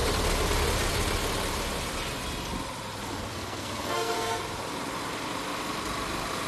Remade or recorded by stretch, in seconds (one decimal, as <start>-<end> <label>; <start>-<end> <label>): 0.0-3.3 recorded; 3.3-4.4 remade; 4.4-6.5 recorded